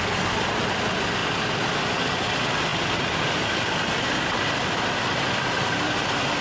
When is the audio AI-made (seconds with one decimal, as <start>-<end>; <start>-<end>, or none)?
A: none